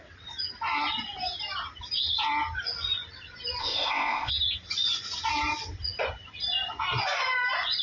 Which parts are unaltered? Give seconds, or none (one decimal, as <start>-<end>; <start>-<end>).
0.0-3.6; 4.3-7.8

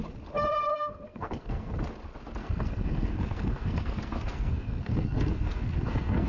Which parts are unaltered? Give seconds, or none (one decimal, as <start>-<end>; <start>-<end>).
0.0-0.7; 1.8-2.4

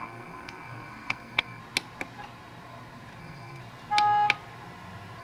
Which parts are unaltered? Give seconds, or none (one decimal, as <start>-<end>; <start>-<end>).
1.6-3.2; 3.6-5.2

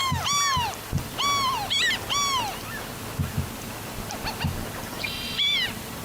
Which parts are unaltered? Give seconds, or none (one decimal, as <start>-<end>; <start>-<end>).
0.0-4.8

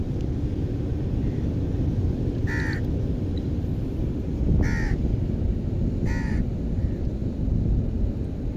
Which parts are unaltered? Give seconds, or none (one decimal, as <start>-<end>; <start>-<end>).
0.0-3.7; 4.4-8.6

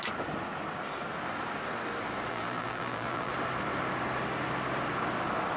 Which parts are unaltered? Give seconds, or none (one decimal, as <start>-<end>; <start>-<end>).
0.0-2.3; 3.3-5.6

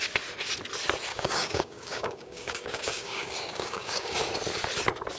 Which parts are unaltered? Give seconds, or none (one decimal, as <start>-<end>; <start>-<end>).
0.0-1.1; 4.2-5.2

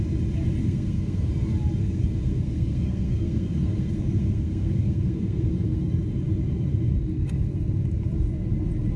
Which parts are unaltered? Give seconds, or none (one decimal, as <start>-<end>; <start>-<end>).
0.0-0.6; 1.3-1.8; 5.9-7.1; 7.7-9.0